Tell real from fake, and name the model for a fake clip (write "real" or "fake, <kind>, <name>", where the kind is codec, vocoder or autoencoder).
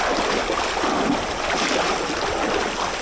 real